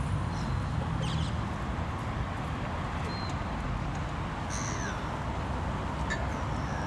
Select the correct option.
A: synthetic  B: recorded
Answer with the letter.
B